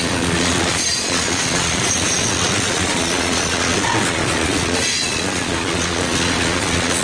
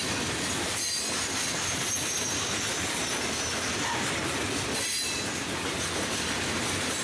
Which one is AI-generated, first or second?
first